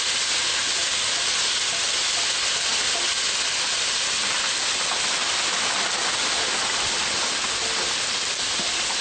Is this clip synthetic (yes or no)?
no